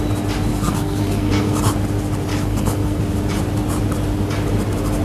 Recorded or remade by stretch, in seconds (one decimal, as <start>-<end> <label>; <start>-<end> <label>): 0.0-0.5 recorded; 0.5-1.6 remade; 1.6-2.3 recorded; 2.3-3.0 remade; 3.0-5.0 recorded

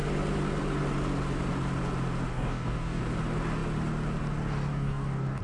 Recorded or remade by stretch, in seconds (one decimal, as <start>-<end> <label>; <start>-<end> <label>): 0.0-2.3 recorded; 2.3-3.0 remade; 3.0-4.7 recorded; 4.7-5.4 remade

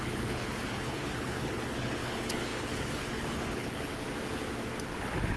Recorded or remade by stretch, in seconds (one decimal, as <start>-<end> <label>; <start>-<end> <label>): 0.0-3.9 remade; 3.9-5.0 recorded; 5.0-5.4 remade

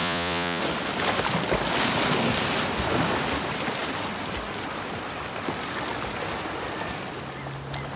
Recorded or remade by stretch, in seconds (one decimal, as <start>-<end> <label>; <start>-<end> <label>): 0.0-0.6 remade; 0.6-8.0 recorded

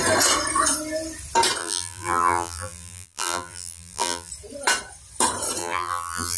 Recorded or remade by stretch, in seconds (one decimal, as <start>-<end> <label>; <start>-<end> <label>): 0.0-1.6 recorded; 1.6-4.3 remade; 4.3-5.6 recorded; 5.6-6.4 remade

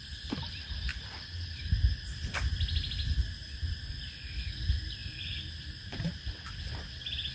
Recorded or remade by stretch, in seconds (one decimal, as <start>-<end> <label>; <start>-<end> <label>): 0.0-7.3 recorded

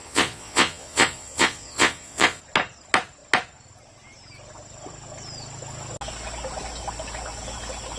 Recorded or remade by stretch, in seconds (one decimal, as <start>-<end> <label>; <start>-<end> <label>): 0.0-2.4 remade; 2.4-8.0 recorded